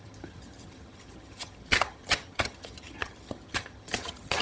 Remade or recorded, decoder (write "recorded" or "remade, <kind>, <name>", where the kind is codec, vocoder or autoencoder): remade, vocoder, HiFi-GAN